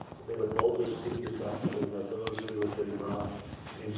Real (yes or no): no